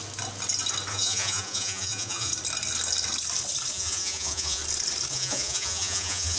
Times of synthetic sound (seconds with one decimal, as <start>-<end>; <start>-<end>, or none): 0.9-2.3; 3.7-4.6; 5.1-6.4